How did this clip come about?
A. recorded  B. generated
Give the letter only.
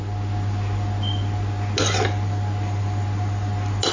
A